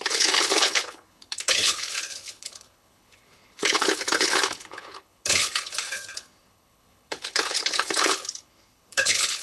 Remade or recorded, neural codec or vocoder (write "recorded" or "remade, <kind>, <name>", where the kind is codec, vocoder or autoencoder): remade, codec, HILCodec